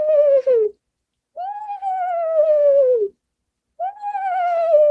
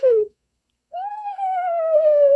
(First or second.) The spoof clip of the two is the second